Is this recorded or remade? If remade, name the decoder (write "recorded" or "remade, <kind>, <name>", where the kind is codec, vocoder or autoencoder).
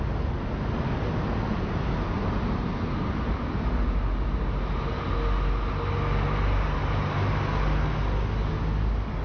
recorded